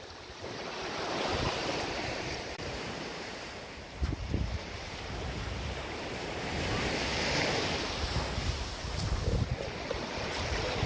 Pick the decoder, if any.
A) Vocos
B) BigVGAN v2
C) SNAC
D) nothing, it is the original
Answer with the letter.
B